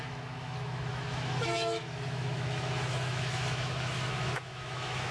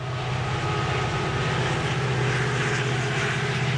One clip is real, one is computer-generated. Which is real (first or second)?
second